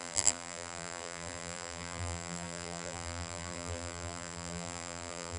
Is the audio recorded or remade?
remade